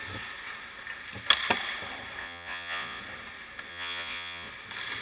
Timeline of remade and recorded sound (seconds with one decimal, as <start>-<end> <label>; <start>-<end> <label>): 0.0-2.2 recorded; 2.2-3.0 remade; 3.0-3.7 recorded; 3.7-4.5 remade; 4.5-5.0 recorded